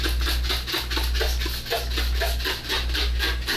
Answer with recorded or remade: recorded